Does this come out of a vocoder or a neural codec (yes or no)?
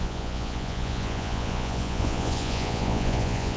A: yes